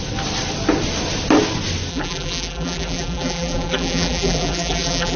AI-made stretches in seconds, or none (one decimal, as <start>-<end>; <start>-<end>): 1.9-5.2